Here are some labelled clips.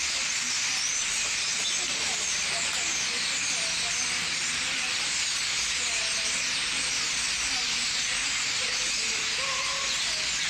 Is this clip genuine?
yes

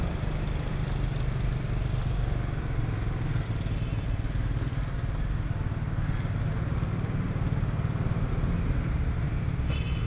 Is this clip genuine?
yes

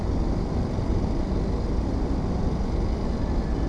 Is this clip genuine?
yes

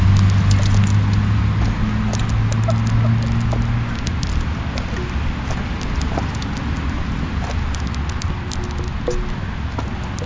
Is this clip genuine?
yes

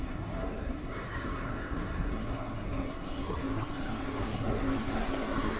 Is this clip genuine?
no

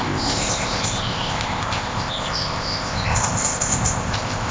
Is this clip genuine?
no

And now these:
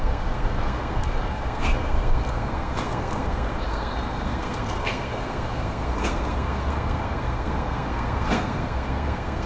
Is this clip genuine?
no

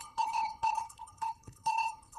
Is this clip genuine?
no